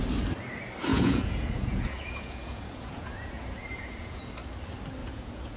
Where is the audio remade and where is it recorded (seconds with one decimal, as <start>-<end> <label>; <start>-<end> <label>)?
0.0-0.9 recorded; 0.9-4.3 remade; 4.3-5.0 recorded; 5.0-5.6 remade